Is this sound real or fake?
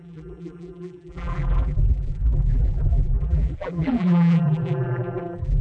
fake